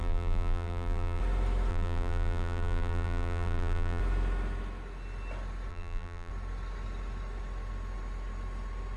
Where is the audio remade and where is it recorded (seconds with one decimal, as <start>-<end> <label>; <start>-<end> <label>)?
0.0-1.2 remade; 1.2-1.7 recorded; 1.7-4.0 remade; 4.0-5.7 recorded; 5.7-6.3 remade; 6.3-9.0 recorded

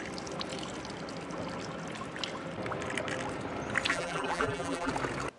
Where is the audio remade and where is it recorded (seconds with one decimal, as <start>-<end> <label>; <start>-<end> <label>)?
0.0-3.9 recorded; 3.9-4.9 remade; 4.9-5.4 recorded